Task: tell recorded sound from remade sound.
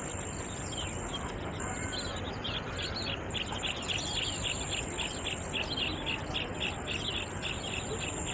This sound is recorded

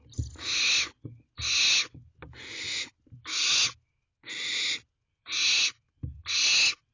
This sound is recorded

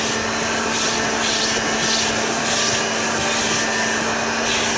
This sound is recorded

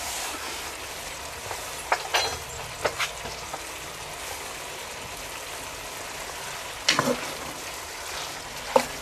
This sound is recorded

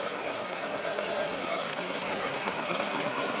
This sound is remade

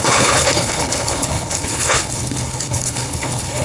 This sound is remade